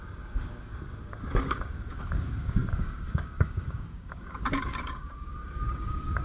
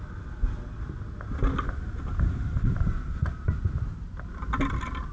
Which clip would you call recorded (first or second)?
second